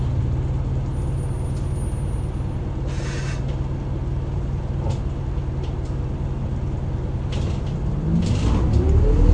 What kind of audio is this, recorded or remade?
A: recorded